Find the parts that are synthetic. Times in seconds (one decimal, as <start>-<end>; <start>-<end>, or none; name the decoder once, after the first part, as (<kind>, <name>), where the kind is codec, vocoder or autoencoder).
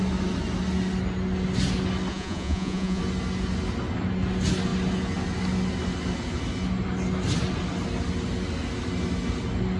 2.1-3.0 (vocoder, Vocos)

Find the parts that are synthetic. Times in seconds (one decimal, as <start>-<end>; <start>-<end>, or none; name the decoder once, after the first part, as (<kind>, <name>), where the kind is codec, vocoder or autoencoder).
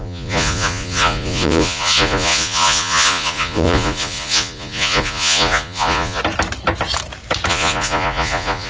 0.0-6.2 (vocoder, Vocos); 7.5-8.7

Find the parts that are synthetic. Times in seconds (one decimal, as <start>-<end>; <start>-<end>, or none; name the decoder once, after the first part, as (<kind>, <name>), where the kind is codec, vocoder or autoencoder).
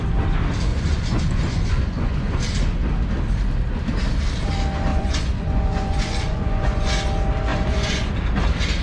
0.7-2.4 (vocoder, Vocos); 4.9-6.9; 7.5-8.1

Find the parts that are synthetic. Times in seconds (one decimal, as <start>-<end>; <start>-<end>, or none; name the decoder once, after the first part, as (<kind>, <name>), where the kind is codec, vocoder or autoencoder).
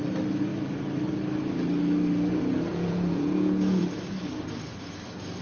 2.7-3.8 (vocoder, Vocos)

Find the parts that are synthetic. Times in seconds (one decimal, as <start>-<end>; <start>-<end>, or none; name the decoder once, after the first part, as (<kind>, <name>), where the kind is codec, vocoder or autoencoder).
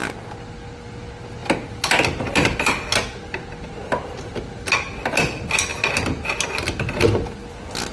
none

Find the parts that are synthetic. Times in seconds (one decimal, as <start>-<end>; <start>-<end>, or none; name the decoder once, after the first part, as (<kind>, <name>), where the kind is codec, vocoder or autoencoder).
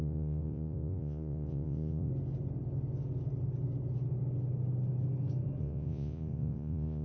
0.0-2.1 (vocoder, Vocos); 5.6-7.0